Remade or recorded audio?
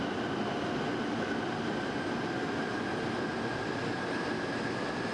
recorded